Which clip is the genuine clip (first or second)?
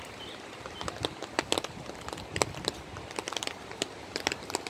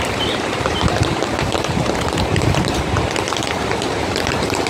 first